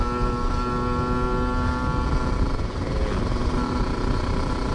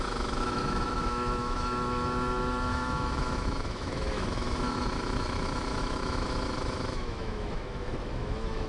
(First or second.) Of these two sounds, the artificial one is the second